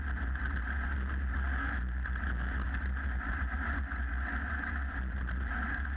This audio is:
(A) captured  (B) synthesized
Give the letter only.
A